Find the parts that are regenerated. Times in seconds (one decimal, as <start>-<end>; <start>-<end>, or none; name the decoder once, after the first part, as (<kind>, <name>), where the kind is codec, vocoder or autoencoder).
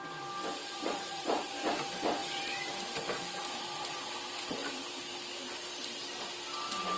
0.6-1.5 (vocoder, Vocos)